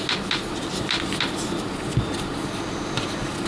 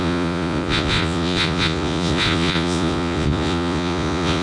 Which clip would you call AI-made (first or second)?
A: second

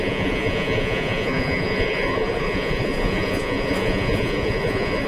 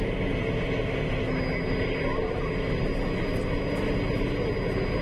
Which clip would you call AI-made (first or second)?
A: first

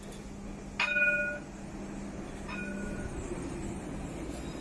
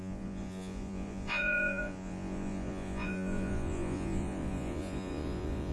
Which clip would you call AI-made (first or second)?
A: second